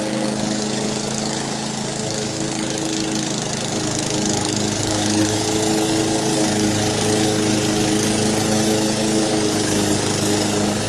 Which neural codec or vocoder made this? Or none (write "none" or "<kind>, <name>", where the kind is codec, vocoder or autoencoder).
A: codec, DAC